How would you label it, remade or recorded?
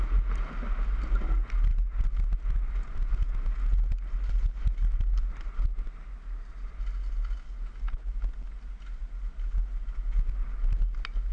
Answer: recorded